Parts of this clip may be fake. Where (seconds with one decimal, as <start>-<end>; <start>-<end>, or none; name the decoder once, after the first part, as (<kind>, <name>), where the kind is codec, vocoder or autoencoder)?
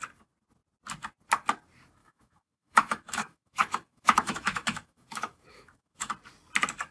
2.0-6.1 (autoencoder, DAC-VAE)